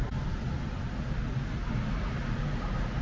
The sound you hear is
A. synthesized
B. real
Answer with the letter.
B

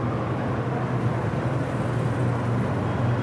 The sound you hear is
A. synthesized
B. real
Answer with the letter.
B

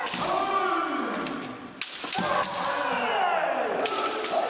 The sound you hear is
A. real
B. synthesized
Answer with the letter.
A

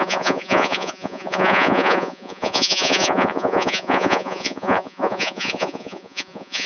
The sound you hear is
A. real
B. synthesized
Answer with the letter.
B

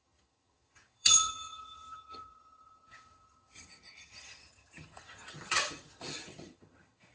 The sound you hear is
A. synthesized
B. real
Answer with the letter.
A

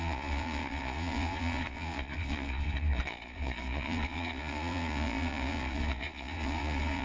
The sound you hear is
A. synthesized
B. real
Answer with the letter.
A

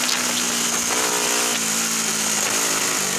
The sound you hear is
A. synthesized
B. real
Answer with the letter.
B